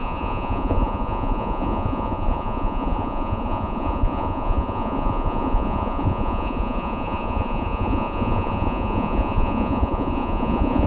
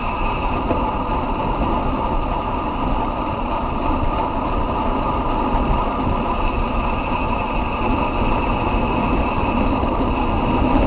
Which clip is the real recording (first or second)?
second